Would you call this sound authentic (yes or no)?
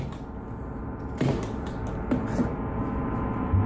yes